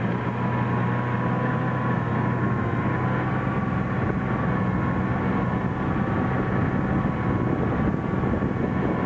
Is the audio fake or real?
real